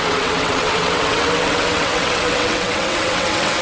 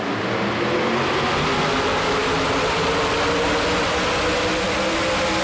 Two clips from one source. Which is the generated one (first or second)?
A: first